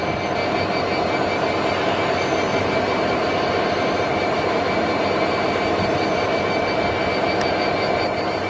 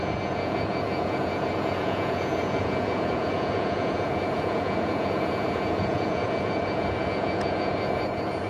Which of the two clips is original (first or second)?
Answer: first